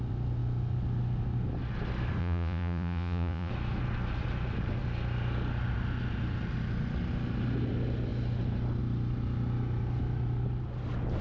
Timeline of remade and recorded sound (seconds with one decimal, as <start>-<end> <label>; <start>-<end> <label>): 0.0-2.2 recorded; 2.2-3.5 remade; 3.5-11.2 recorded